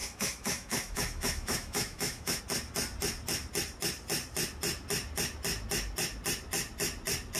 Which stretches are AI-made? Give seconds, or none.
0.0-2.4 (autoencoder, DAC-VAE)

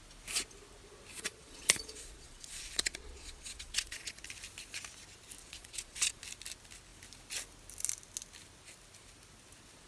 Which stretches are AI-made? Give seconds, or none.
1.1-4.2 (vocoder, Vocos); 5.4-6.2

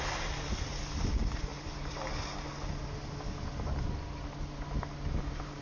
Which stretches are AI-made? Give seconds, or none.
none

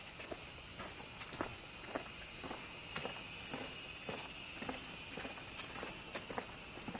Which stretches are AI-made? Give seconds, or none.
0.0-1.1 (vocoder, Vocos); 1.5-2.2

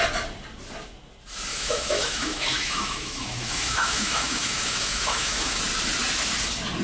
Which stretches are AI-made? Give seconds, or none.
1.5-5.6 (autoencoder, DAC-VAE)

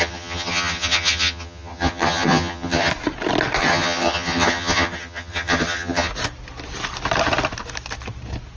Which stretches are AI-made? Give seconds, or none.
0.0-2.9 (vocoder, HiFi-GAN); 3.6-6.1

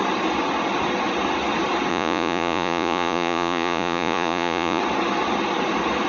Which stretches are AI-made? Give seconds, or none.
1.9-4.8 (vocoder, Vocos)